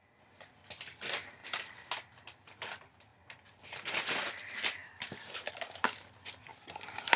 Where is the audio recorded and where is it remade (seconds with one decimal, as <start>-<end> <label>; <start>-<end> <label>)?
0.0-3.1 recorded; 3.1-4.2 remade; 4.2-4.8 recorded; 4.8-5.5 remade; 5.5-6.5 recorded; 6.5-7.2 remade